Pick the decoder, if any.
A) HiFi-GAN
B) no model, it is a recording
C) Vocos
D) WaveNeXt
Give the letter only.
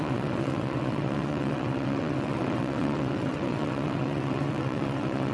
D